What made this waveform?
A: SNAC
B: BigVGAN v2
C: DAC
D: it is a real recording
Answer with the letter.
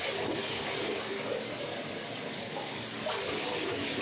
C